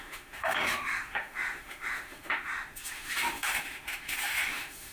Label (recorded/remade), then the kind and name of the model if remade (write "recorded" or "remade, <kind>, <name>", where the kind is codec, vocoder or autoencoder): remade, autoencoder, DAC-VAE